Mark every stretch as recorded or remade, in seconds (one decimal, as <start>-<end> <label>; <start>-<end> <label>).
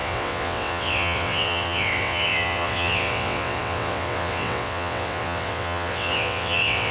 0.0-6.9 remade